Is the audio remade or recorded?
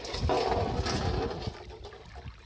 recorded